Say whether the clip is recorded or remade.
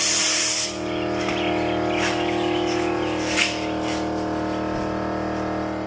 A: recorded